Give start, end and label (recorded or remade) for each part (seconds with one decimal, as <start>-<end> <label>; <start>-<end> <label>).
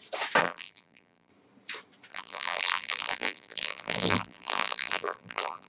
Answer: 0.0-0.4 recorded; 0.4-1.3 remade; 1.3-2.1 recorded; 2.1-5.7 remade